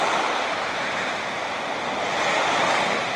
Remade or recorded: recorded